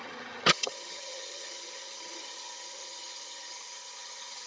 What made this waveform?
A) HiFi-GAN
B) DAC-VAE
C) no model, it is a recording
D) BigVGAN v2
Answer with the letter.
A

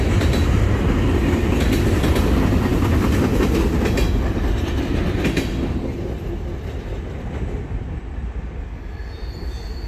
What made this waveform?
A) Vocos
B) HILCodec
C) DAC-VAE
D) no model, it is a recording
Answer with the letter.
D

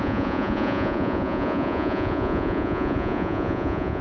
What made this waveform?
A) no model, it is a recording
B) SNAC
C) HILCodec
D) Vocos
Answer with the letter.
D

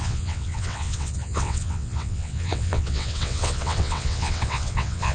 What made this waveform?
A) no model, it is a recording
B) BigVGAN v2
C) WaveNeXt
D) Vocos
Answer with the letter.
C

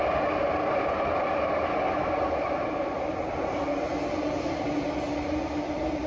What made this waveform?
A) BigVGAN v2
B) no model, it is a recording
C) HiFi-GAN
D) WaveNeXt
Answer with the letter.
B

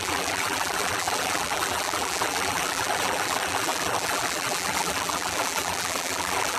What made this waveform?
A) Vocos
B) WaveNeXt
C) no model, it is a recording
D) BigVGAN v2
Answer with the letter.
D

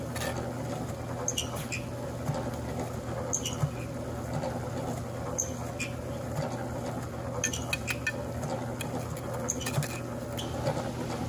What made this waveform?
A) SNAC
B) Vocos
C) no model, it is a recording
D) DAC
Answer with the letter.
C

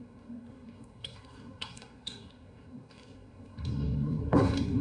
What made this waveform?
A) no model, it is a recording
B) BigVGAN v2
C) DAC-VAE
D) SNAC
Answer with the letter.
D